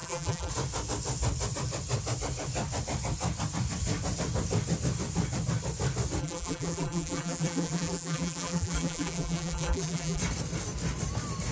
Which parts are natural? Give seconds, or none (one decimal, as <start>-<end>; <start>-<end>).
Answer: 0.5-6.2; 10.2-11.5